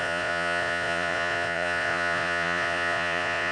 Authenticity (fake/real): fake